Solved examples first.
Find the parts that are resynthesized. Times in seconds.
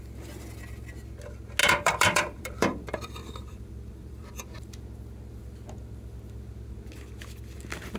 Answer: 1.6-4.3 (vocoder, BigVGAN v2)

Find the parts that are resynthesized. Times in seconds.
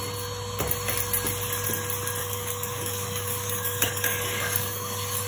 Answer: 2.2-5.3 (codec, DAC)